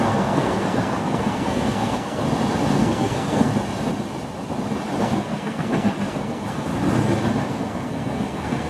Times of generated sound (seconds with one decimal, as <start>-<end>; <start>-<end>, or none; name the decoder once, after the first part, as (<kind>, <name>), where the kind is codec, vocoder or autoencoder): 0.0-2.2 (codec, SNAC); 2.7-3.5; 5.0-6.7; 7.5-8.7